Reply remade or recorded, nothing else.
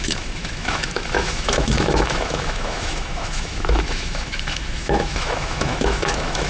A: remade